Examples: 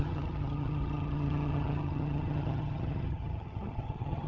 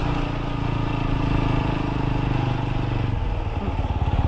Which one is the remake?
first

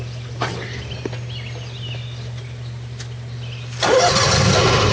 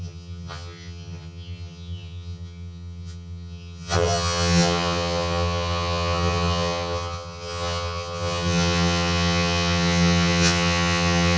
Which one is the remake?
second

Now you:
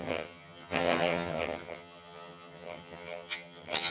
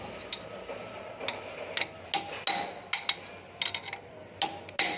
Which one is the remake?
first